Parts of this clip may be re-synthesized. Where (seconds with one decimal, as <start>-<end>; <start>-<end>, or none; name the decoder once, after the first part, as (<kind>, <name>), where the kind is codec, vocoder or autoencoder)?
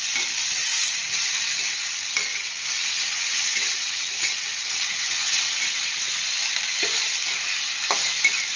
2.3-6.1 (vocoder, WaveNeXt)